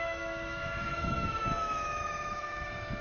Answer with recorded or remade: remade